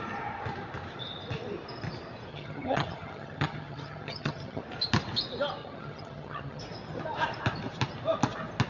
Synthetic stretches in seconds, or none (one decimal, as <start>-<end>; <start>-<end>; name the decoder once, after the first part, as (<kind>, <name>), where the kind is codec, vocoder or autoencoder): 2.3-4.6 (vocoder, HiFi-GAN); 5.6-6.6